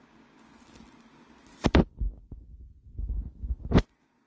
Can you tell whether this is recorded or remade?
recorded